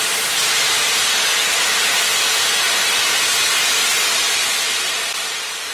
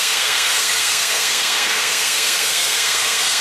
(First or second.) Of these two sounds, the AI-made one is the second